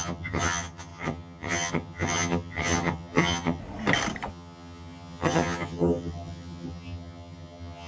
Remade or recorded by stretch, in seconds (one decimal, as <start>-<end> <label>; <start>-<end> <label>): 0.0-3.6 remade; 3.6-4.3 recorded; 4.3-7.9 remade